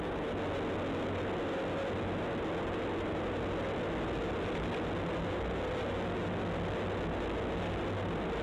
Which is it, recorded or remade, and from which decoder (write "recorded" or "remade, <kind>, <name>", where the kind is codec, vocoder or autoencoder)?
recorded